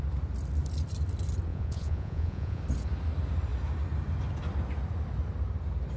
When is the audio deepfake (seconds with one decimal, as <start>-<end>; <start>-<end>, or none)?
1.5-2.6